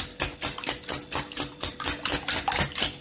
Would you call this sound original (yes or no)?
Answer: yes